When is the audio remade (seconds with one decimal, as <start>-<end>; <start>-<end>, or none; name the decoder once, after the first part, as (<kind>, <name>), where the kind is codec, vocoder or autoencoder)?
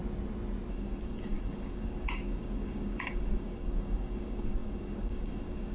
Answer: 0.7-5.7 (codec, DAC)